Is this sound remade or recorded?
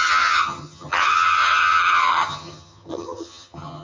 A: remade